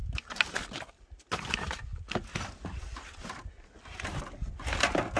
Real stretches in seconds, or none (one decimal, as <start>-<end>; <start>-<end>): 0.0-1.5; 1.9-5.2